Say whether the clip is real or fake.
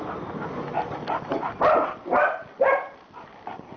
real